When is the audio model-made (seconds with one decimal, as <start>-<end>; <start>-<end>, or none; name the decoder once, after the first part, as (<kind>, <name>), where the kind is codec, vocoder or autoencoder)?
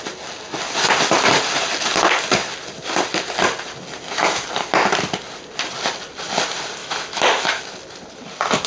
6.8-7.6 (autoencoder, DAC-VAE)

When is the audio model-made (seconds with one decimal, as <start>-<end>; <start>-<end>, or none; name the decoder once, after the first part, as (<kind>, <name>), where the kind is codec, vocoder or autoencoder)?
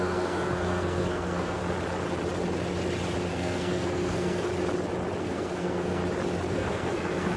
0.0-1.6 (codec, SNAC); 3.3-4.5; 5.2-6.0; 6.5-7.4